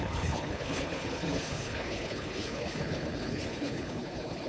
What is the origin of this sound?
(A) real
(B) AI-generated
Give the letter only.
B